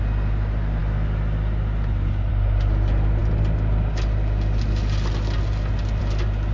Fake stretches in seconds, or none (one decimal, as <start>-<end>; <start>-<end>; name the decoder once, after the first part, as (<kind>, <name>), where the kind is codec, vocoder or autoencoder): none